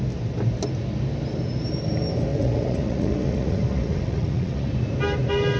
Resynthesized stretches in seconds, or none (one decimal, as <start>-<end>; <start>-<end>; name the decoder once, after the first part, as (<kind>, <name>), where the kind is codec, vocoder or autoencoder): 2.3-4.7 (vocoder, Vocos)